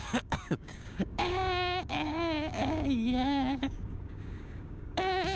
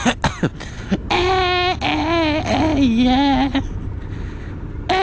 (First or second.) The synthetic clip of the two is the first